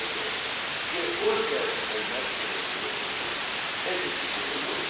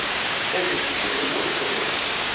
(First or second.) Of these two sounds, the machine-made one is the second